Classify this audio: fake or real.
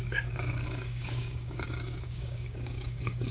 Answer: fake